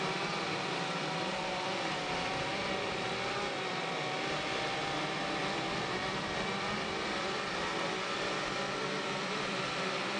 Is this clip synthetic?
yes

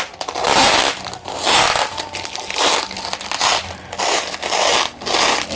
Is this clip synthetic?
no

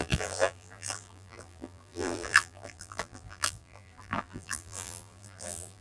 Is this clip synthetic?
yes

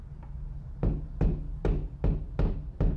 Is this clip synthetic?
no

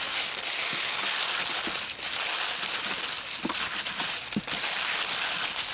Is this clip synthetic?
no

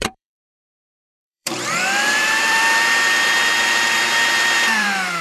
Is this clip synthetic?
yes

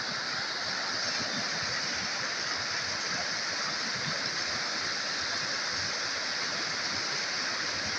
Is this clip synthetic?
no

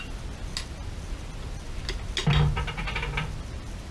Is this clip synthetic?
no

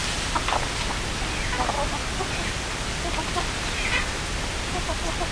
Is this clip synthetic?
no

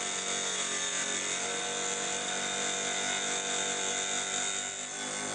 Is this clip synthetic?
no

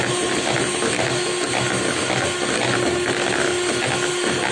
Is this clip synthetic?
no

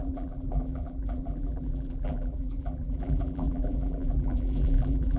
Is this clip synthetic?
yes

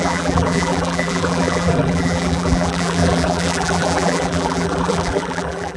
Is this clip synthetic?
yes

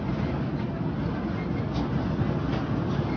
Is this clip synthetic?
no